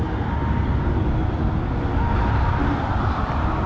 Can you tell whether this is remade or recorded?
recorded